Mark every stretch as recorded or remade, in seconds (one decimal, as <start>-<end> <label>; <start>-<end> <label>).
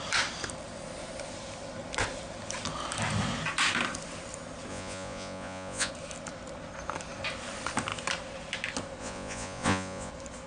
0.0-4.7 recorded; 4.7-5.9 remade; 5.9-9.0 recorded; 9.0-10.1 remade; 10.1-10.5 recorded